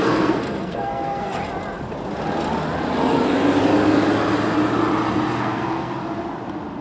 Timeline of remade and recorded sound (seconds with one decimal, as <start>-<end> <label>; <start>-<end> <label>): 0.0-1.4 remade; 1.4-5.4 recorded; 5.4-6.0 remade; 6.0-6.8 recorded